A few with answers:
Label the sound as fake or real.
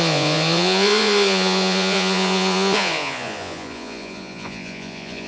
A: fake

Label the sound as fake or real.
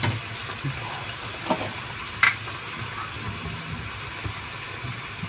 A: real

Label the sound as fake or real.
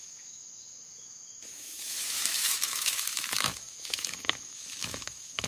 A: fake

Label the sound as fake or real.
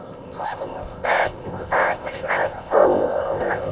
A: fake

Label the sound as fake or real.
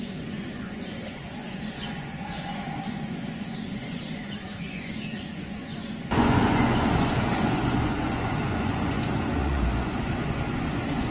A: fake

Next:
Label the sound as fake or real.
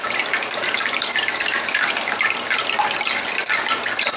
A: real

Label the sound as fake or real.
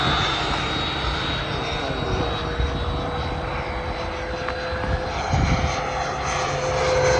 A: real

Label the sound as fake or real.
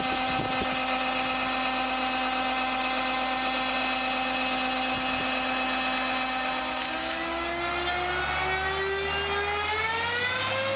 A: real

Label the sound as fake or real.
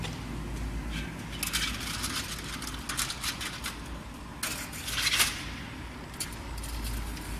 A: real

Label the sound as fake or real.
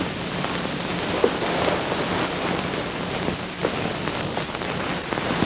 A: real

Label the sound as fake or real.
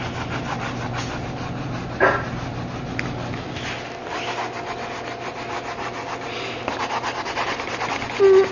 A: real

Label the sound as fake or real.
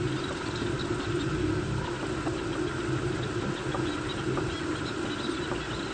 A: real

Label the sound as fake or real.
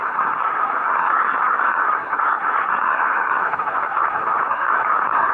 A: fake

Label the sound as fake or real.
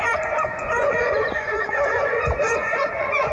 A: fake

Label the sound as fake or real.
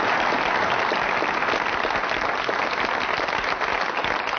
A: real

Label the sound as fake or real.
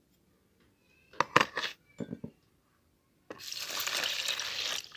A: real